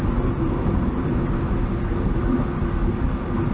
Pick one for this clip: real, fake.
real